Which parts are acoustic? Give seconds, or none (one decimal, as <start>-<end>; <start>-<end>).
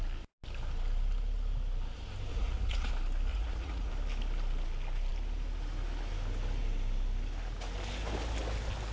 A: 0.0-2.3; 2.9-3.3; 3.9-8.9